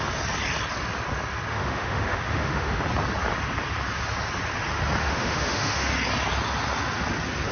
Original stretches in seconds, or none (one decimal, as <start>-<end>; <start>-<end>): 0.0-1.5; 2.8-5.0; 5.9-7.5